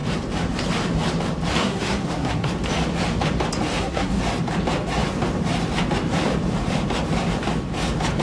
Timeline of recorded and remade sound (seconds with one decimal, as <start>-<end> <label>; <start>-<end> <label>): 0.0-1.6 recorded; 1.6-2.5 remade; 2.5-3.7 recorded; 3.7-4.2 remade; 4.2-8.2 recorded